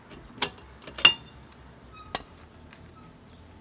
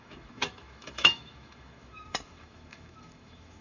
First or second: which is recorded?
first